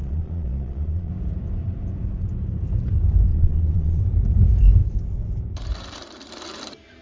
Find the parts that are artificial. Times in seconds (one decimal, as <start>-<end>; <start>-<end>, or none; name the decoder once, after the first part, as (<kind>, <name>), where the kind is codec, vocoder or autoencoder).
0.0-1.1 (vocoder, Vocos); 3.3-4.0